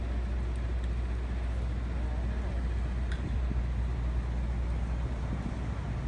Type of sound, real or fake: real